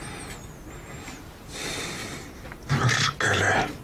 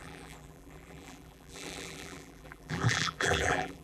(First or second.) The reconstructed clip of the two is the second